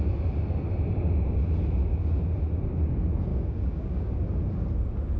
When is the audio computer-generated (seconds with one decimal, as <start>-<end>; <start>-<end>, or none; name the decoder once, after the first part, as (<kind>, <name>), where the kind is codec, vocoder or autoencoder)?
3.3-4.1 (codec, DAC)